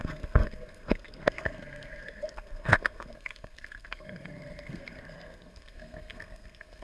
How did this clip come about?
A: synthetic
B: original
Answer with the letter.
A